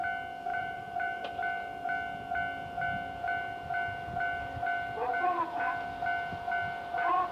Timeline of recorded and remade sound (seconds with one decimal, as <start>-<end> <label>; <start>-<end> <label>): 0.0-0.5 recorded; 0.5-1.3 remade; 1.3-7.3 recorded